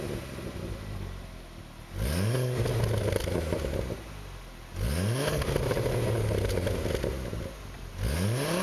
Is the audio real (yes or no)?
yes